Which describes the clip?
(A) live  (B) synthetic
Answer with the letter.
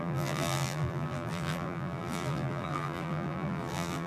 B